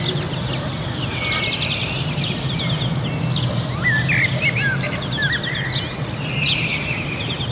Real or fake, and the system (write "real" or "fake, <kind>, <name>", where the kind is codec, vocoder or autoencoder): real